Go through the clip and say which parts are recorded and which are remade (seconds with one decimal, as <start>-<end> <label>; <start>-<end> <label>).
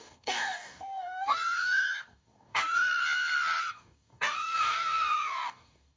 0.0-3.0 remade; 3.0-3.6 recorded; 3.6-6.0 remade